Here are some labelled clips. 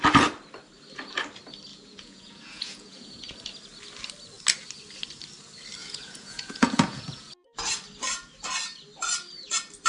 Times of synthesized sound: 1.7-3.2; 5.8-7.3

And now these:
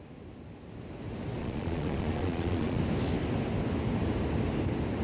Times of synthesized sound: 1.4-2.8